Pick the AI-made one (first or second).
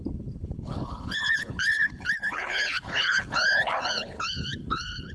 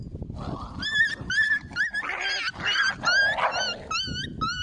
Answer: first